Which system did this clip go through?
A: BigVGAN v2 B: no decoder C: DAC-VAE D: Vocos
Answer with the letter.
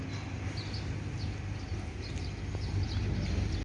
B